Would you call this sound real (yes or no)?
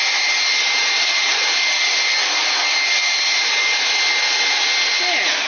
yes